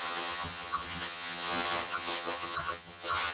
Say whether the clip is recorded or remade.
remade